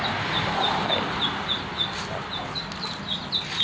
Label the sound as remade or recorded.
recorded